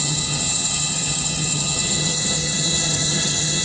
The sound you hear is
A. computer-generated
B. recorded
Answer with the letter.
A